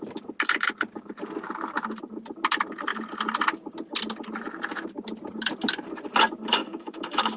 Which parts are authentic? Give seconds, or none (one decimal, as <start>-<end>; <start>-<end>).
0.0-6.6